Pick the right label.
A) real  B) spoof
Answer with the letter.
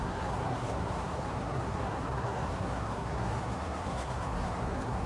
B